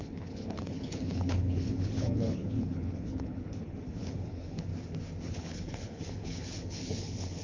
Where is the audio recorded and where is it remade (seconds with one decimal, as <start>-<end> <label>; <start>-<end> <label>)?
0.0-4.7 remade; 4.7-5.2 recorded; 5.2-7.4 remade